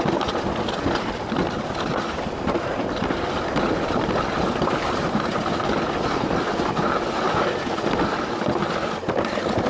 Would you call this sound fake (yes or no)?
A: no